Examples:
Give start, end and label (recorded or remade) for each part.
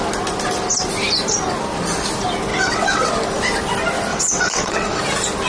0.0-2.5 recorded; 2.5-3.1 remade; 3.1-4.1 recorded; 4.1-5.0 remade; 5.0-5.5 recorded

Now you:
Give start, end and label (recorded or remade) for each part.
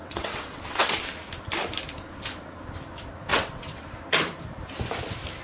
0.0-1.0 remade; 1.0-3.3 recorded; 3.3-3.8 remade; 3.8-5.4 recorded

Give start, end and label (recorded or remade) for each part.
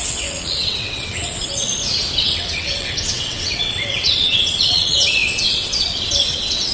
0.0-1.7 remade; 1.7-2.2 recorded; 2.2-6.7 remade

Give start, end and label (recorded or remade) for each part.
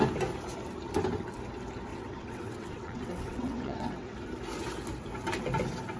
0.0-1.9 recorded; 1.9-4.2 remade; 4.2-6.0 recorded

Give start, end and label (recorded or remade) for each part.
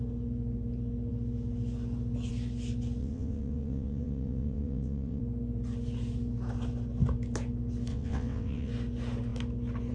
0.0-3.0 recorded; 3.0-5.2 remade; 5.2-7.9 recorded; 7.9-8.7 remade; 8.7-9.9 recorded